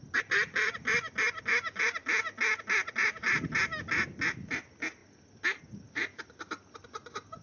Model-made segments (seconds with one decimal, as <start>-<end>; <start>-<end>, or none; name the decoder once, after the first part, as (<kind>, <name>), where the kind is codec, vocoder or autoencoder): none